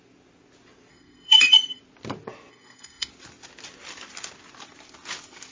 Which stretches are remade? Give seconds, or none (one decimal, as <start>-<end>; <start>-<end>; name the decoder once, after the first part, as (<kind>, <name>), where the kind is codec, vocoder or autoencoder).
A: 0.9-1.8 (codec, SNAC); 2.5-3.1